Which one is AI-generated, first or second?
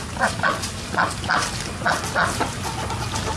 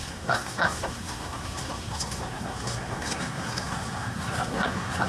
second